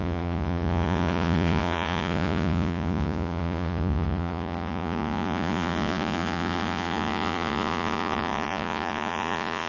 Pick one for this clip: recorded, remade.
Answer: remade